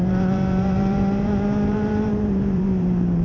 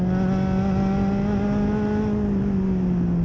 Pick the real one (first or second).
second